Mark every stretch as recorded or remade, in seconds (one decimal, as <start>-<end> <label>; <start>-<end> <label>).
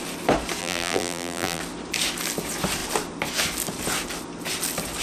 0.0-0.6 recorded; 0.6-1.6 remade; 1.6-5.0 recorded